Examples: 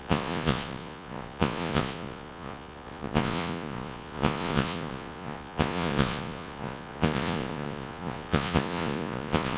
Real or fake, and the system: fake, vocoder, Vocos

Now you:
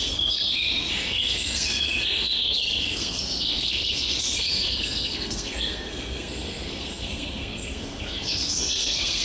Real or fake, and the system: fake, codec, SNAC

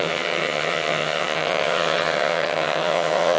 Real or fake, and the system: fake, vocoder, HiFi-GAN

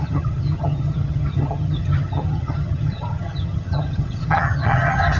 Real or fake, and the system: fake, vocoder, HiFi-GAN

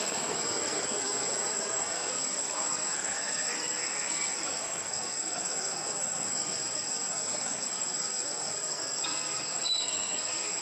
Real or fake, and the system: fake, codec, SNAC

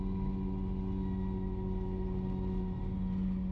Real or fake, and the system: real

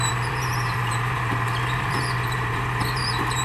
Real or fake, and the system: fake, vocoder, BigVGAN v2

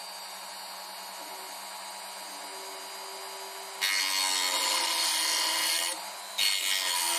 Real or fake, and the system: real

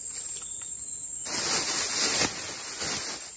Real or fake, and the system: real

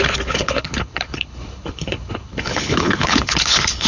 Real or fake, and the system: fake, codec, HILCodec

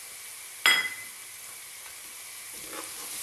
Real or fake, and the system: real